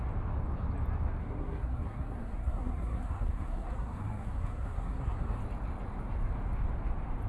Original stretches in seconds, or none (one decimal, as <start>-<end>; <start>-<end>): 0.0-1.2; 5.4-7.3